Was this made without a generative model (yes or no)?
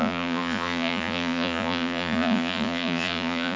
no